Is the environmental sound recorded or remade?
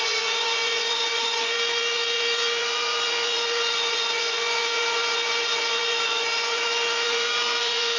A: remade